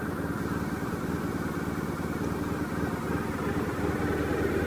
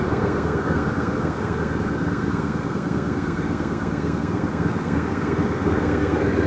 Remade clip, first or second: second